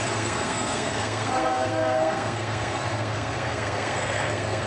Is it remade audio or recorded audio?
remade